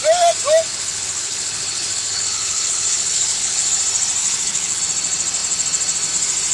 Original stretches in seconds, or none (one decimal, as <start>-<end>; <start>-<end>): 0.0-0.7; 3.7-4.2; 4.8-6.5